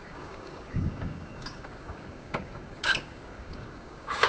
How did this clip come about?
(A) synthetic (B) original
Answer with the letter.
A